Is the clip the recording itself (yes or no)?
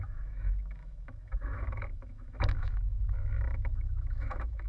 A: no